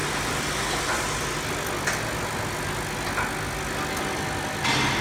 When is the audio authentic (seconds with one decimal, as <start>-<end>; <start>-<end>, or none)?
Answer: 0.0-5.0